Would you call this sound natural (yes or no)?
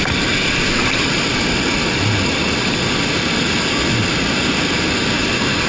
yes